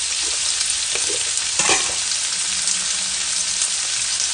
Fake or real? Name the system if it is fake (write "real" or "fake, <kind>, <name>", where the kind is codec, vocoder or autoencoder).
real